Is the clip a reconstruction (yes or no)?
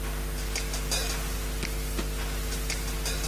no